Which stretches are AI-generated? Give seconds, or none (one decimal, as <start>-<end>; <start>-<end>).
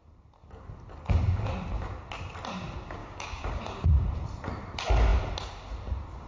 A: 3.0-3.6